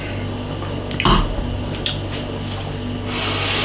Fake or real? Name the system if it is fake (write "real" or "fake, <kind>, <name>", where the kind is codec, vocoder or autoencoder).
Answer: real